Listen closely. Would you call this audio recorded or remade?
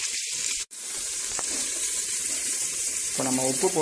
remade